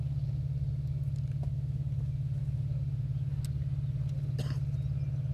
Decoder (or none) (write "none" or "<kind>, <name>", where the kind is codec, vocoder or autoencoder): none